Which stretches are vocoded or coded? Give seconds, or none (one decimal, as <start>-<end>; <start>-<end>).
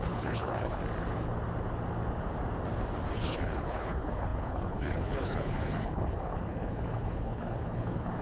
0.0-0.8; 3.1-8.2